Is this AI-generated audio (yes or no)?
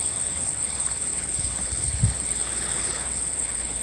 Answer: yes